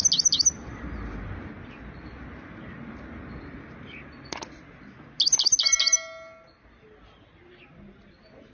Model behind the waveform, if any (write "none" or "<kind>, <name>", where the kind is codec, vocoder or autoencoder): none